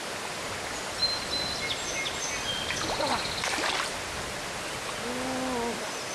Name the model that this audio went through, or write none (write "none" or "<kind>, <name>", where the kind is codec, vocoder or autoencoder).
none